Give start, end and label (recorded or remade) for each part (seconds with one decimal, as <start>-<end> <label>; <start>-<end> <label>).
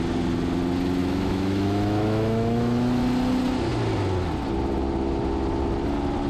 0.0-1.0 recorded; 1.0-3.0 remade; 3.0-6.3 recorded